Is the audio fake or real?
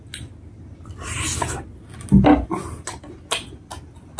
real